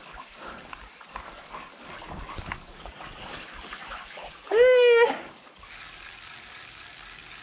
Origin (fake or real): fake